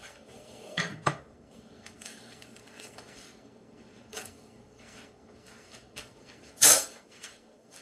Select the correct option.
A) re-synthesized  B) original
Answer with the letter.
A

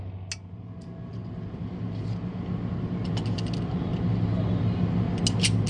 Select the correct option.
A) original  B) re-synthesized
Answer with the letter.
A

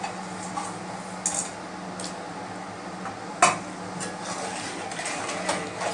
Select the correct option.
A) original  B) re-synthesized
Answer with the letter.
A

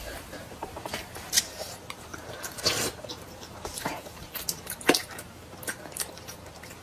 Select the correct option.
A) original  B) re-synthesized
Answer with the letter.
B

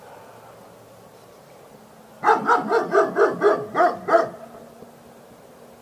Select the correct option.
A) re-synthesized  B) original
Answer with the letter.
B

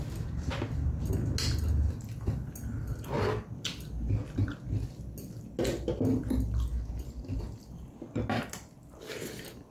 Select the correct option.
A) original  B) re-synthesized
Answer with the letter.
A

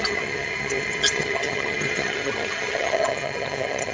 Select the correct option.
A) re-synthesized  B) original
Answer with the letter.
A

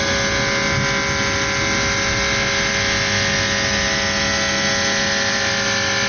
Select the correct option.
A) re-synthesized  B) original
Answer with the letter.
B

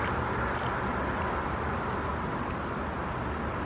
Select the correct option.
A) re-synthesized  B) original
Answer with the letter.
B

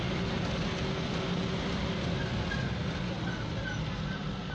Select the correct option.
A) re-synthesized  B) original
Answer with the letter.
B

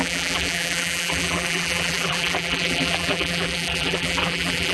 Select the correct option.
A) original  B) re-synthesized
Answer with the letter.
B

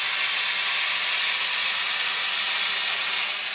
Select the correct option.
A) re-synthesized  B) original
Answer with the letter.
B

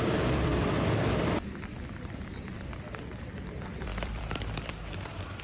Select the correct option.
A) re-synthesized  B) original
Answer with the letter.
A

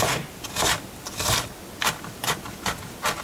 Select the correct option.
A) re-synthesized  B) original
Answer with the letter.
B